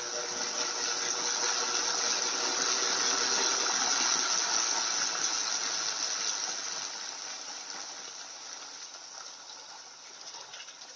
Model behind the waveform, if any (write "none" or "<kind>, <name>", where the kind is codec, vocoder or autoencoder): none